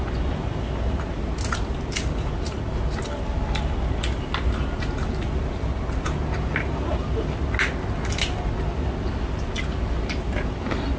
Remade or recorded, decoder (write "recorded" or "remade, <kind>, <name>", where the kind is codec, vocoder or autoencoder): recorded